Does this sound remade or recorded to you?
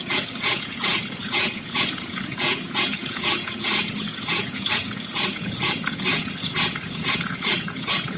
remade